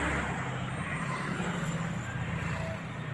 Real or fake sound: real